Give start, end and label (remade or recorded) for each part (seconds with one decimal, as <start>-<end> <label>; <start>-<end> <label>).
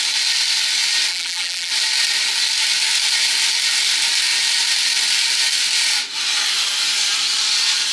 0.0-1.1 recorded; 1.1-1.7 remade; 1.7-7.9 recorded